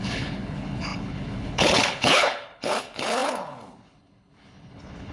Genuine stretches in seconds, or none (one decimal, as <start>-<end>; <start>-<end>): none